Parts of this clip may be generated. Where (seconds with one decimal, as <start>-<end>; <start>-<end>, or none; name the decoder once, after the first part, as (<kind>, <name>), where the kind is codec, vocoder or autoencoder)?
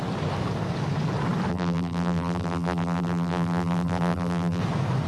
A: 1.5-4.6 (vocoder, BigVGAN v2)